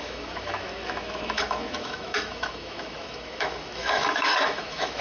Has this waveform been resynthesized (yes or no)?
yes